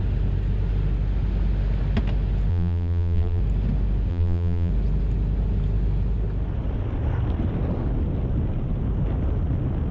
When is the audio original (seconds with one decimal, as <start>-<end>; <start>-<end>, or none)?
0.0-2.5; 3.4-4.1; 4.7-9.9